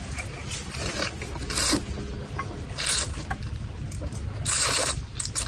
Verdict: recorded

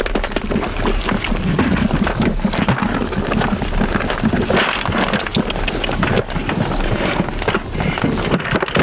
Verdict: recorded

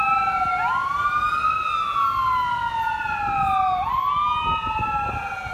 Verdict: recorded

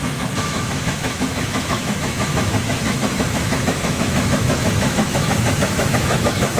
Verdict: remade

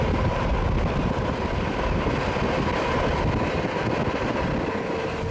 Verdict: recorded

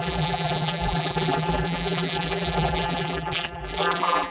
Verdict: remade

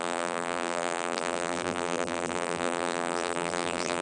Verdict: remade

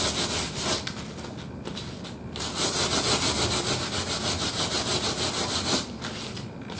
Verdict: recorded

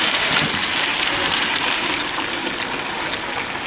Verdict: remade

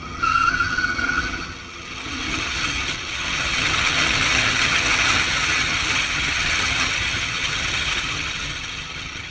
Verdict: remade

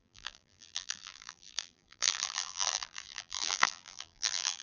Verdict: remade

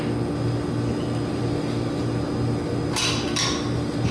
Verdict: recorded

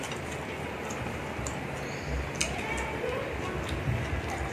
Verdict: recorded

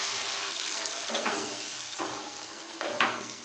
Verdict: remade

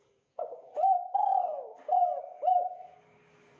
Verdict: remade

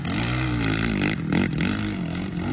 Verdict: recorded